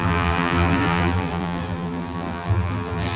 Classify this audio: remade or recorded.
remade